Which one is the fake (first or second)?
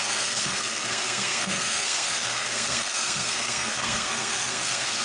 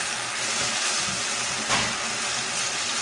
first